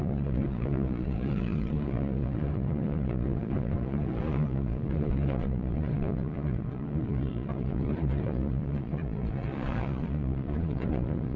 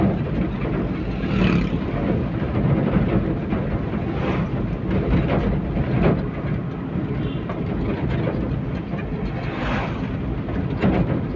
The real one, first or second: second